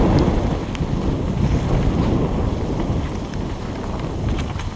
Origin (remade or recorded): recorded